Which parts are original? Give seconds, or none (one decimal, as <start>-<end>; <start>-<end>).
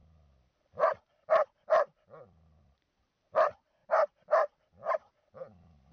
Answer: none